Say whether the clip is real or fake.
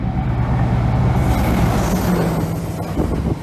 real